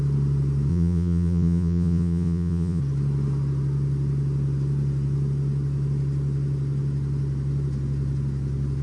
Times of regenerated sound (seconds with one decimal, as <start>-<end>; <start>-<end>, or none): 0.7-2.8

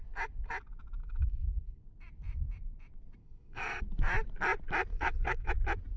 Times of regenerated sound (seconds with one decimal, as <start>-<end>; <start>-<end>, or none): 1.0-1.8; 3.2-3.8; 4.9-5.5

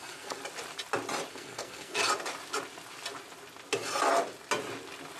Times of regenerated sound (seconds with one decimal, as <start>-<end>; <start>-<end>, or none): 0.0-0.4; 1.3-2.0

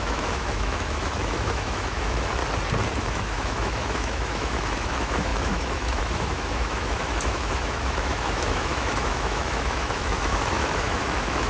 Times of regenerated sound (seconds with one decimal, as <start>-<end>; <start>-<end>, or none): 0.0-2.4; 3.0-11.5

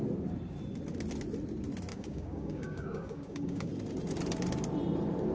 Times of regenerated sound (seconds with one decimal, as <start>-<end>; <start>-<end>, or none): 1.9-3.7

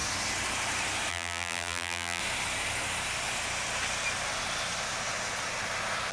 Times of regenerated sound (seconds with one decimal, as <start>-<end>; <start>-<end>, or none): 1.1-2.2

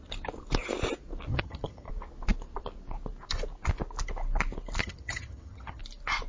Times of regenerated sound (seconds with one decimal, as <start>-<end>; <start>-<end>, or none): 1.3-1.9; 4.8-5.8

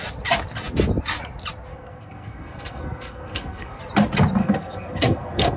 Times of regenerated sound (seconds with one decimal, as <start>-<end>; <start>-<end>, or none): 1.7-3.8; 4.4-5.6